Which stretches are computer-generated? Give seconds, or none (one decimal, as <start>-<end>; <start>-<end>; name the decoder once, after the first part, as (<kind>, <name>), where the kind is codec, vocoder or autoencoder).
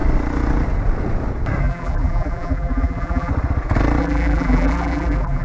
1.6-3.3 (vocoder, BigVGAN v2); 4.0-5.4